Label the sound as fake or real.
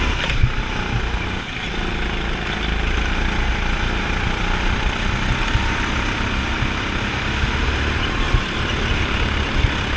real